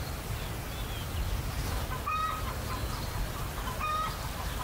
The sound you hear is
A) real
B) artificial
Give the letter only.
A